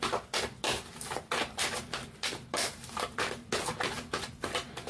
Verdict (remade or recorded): recorded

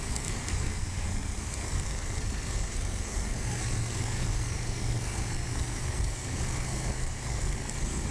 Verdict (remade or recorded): remade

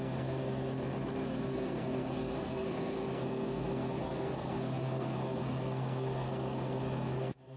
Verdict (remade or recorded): remade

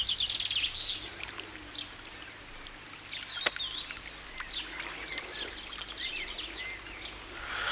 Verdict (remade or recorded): recorded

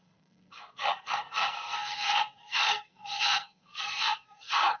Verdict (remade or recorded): remade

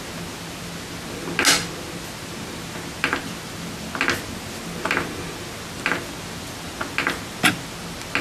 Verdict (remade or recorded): recorded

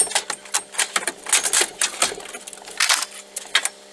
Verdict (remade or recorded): recorded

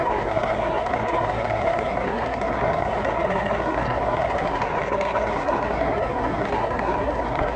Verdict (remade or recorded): remade